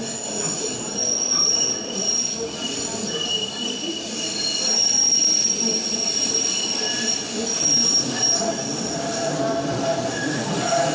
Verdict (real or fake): real